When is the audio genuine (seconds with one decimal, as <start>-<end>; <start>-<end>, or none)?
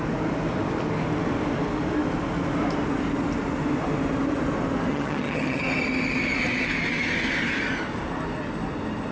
0.0-4.9; 5.6-9.1